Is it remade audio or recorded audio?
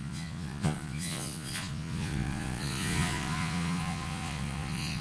remade